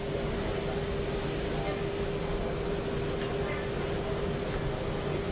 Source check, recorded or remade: recorded